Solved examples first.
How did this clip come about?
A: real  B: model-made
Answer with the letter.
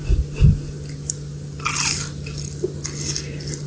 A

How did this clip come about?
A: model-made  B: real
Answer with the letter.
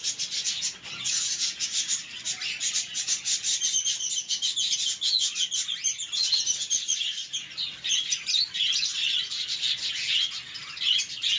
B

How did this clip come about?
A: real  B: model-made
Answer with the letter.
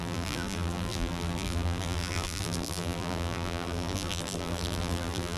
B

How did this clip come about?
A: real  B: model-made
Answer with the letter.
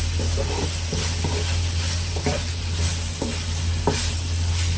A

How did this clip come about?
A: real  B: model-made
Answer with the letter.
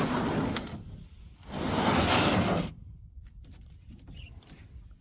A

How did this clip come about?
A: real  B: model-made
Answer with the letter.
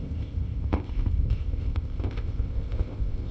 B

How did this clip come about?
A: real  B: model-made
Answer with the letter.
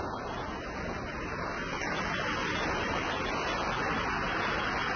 A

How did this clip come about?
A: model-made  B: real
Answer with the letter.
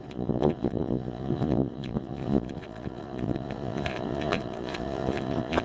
A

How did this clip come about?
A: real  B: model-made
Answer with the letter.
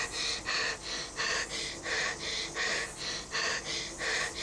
A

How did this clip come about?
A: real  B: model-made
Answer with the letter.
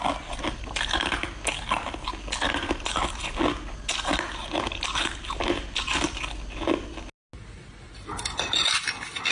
A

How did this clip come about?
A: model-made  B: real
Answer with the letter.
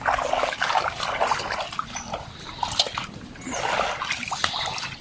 B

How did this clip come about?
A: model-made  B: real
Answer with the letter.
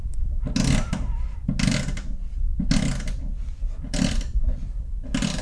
B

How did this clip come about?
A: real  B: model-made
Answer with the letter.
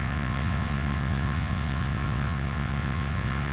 B